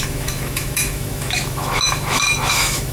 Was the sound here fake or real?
fake